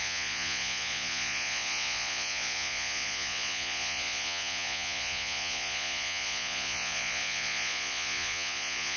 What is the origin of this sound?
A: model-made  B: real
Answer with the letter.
A